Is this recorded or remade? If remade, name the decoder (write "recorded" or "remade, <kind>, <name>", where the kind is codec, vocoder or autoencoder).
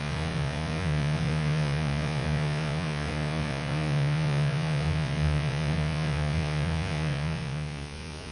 remade, vocoder, Vocos